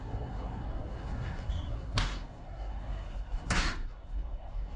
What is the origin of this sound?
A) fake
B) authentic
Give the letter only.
A